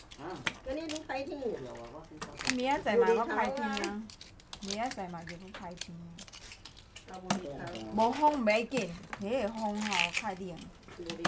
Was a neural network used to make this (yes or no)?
no